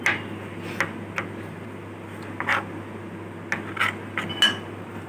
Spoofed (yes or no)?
no